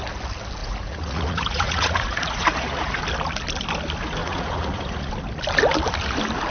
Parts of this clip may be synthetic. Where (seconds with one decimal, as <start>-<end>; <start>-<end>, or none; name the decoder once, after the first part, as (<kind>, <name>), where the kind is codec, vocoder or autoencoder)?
0.6-3.0 (vocoder, Vocos); 4.2-5.1